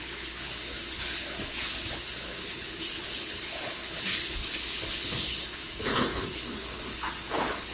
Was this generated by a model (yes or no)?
yes